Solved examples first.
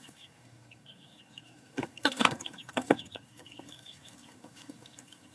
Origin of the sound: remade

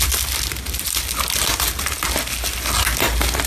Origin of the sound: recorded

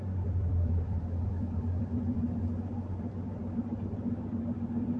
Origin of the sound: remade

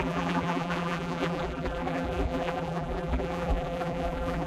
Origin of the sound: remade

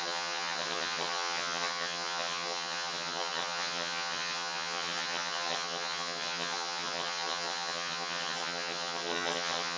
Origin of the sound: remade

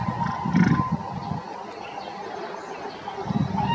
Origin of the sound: recorded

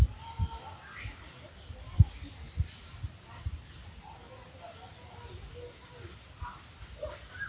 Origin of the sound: recorded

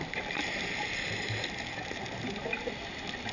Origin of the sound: recorded